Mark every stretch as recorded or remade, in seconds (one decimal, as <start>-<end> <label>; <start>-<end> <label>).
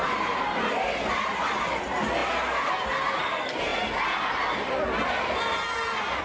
0.0-1.6 remade; 1.6-6.2 recorded